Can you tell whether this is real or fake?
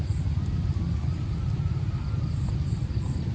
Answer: real